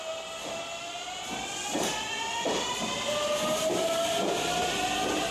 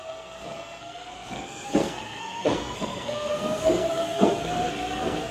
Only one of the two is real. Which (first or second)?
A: first